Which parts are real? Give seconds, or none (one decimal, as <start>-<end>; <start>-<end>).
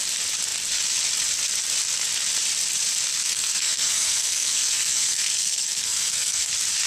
0.0-3.2; 6.5-6.9